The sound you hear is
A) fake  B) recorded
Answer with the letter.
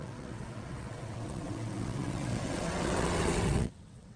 A